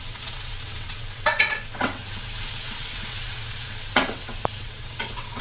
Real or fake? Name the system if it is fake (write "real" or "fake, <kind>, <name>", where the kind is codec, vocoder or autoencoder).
fake, vocoder, WaveNeXt